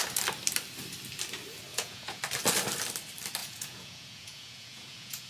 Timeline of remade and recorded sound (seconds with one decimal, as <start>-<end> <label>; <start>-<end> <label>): 0.0-1.7 recorded; 1.7-2.2 remade; 2.2-3.4 recorded; 3.4-5.3 remade